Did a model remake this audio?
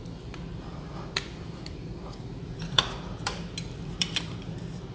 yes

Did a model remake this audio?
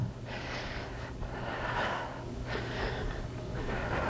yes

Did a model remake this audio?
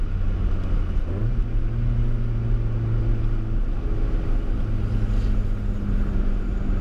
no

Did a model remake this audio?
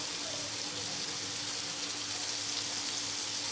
no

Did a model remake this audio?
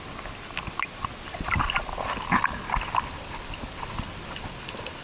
no